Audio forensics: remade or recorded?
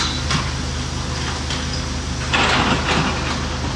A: recorded